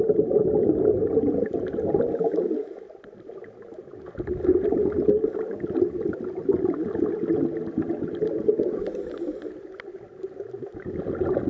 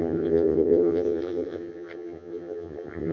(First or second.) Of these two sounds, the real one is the first